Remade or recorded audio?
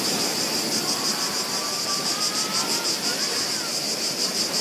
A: recorded